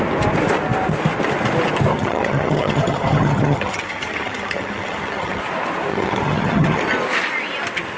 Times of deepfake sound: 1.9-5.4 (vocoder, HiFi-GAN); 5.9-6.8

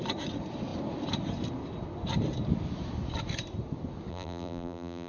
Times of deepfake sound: 4.1-5.1 (vocoder, BigVGAN v2)

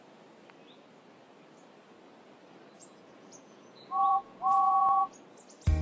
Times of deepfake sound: 2.8-5.1 (vocoder, Vocos)

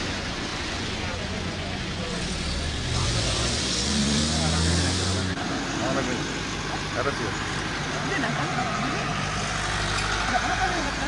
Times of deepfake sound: 0.0-4.2 (vocoder, Vocos); 8.3-9.1; 10.3-11.1